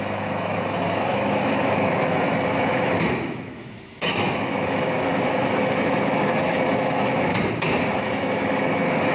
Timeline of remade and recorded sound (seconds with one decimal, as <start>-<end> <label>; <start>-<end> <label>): 0.0-7.3 remade; 7.3-7.9 recorded; 7.9-9.1 remade